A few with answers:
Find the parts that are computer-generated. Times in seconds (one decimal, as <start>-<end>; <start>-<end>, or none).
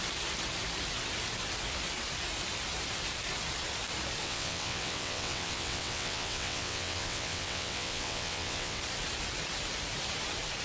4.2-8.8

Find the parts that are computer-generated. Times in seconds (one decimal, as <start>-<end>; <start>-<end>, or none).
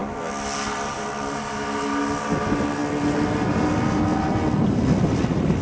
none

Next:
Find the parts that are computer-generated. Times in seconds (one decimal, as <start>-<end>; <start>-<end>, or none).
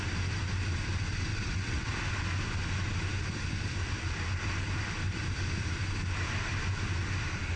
1.3-1.9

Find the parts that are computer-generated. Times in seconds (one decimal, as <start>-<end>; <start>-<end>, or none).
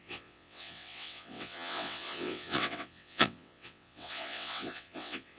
0.0-5.4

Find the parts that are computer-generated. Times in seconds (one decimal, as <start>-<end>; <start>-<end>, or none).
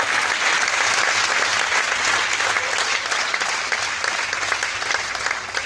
none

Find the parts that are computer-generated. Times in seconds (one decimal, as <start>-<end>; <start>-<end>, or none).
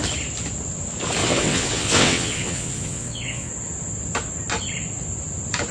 1.2-3.5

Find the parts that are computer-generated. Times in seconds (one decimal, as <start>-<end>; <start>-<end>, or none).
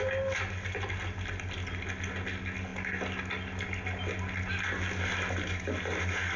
none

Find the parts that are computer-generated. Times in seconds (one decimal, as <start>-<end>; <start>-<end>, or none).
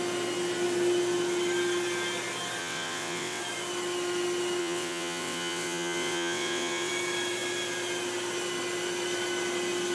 2.6-3.4; 4.6-6.9